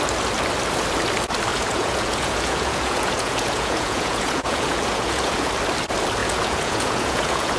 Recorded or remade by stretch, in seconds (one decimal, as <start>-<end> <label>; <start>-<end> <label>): 0.0-1.5 recorded; 1.5-5.5 remade; 5.5-6.2 recorded; 6.2-7.6 remade